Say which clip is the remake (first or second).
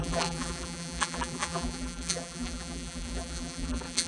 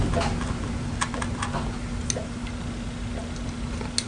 first